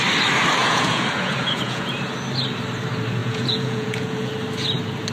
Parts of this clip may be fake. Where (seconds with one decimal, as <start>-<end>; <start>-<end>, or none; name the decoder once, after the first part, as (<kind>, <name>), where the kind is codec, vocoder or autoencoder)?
0.6-1.9 (vocoder, Vocos); 3.2-4.3

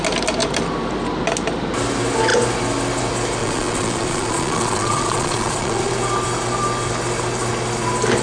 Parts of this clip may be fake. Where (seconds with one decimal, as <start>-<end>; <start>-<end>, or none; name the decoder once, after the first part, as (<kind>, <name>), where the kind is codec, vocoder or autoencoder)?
3.4-5.9 (vocoder, Vocos)

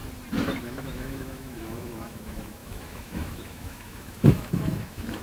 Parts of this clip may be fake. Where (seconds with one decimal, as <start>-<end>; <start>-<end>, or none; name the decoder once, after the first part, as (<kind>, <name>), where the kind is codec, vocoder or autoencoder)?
0.6-5.2 (autoencoder, DAC-VAE)

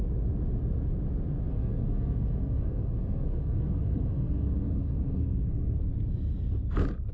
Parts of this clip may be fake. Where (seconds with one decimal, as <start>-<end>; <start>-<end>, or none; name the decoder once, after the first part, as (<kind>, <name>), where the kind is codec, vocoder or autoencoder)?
1.5-5.8 (codec, SNAC)